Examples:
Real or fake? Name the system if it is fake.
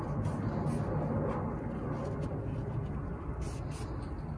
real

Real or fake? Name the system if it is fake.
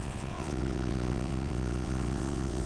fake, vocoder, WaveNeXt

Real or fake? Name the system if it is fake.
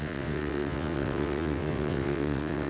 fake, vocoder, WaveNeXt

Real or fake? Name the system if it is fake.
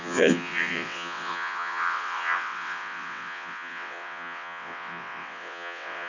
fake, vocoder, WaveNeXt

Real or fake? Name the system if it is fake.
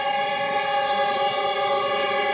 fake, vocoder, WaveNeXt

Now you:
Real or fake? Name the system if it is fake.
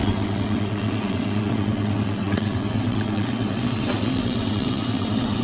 fake, vocoder, WaveNeXt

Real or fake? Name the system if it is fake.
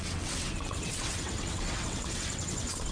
fake, vocoder, WaveNeXt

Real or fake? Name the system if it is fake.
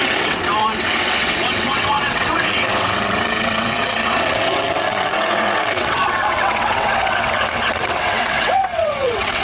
fake, vocoder, WaveNeXt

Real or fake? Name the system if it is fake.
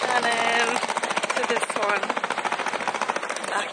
real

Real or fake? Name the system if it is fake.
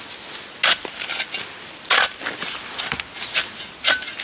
real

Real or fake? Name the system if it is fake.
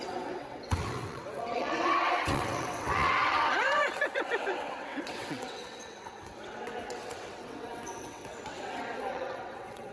fake, vocoder, WaveNeXt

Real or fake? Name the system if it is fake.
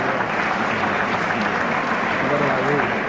real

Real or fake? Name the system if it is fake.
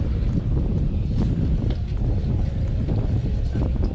real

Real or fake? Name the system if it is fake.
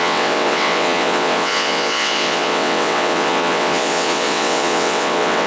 fake, vocoder, WaveNeXt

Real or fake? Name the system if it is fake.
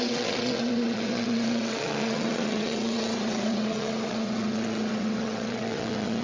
fake, vocoder, WaveNeXt